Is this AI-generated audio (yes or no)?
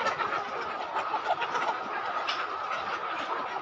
no